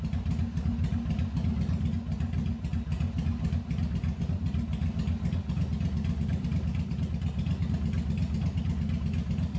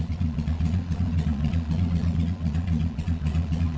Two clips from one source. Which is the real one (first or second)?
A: first